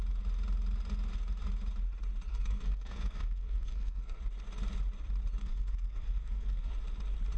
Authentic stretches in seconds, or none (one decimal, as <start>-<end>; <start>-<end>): 0.0-2.3; 4.2-5.4; 6.7-7.4